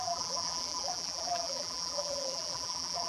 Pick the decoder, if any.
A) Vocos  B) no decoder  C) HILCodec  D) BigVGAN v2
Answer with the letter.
D